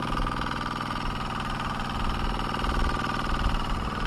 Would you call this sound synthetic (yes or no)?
no